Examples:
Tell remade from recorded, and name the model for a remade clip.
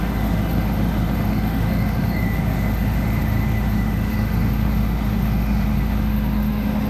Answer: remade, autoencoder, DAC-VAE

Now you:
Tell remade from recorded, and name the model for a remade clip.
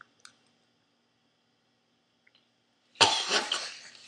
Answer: recorded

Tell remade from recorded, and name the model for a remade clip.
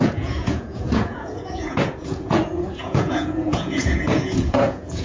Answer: remade, vocoder, Vocos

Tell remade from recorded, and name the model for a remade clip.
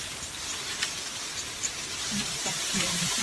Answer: recorded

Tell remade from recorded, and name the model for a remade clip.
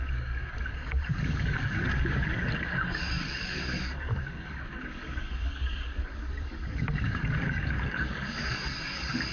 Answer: remade, codec, DAC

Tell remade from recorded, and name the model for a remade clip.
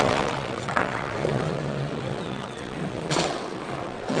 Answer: remade, vocoder, WaveNeXt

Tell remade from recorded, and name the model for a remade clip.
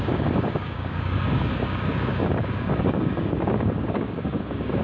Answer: remade, codec, DAC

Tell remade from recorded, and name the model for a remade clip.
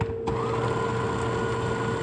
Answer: recorded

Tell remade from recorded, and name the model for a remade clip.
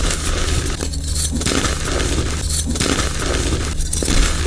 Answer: recorded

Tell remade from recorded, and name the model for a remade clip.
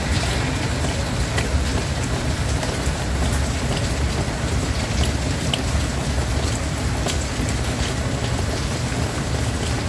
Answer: recorded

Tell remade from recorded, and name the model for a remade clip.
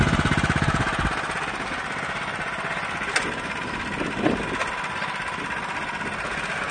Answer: recorded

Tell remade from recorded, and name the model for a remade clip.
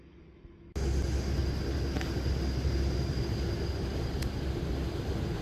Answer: recorded